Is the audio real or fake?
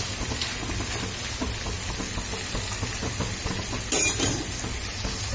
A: real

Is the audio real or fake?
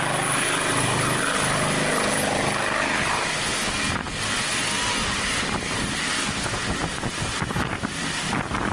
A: real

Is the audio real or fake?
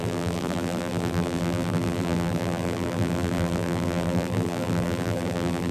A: fake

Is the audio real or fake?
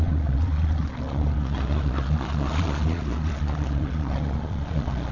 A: fake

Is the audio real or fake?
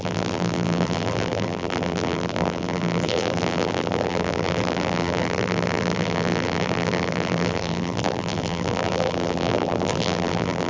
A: fake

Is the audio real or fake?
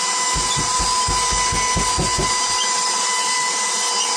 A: real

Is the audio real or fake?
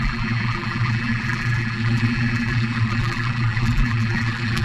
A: fake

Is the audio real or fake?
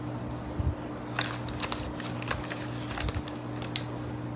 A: real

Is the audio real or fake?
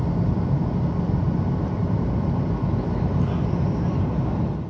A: real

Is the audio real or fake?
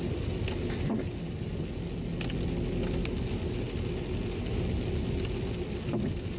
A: real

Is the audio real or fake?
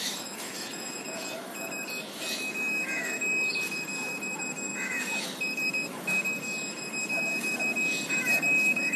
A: fake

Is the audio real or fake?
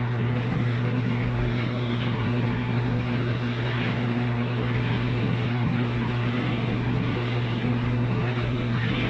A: fake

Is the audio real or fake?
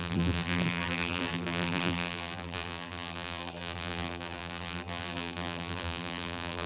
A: fake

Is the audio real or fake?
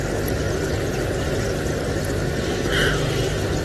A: real